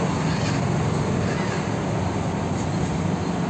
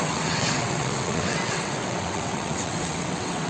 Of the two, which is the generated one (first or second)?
second